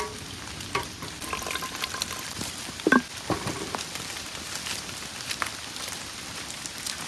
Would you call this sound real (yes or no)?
yes